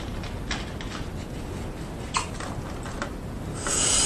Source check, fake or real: real